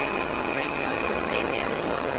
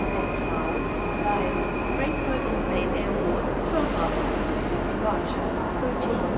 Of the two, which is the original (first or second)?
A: second